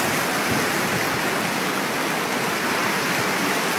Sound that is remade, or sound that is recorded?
recorded